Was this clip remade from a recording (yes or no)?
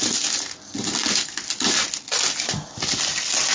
no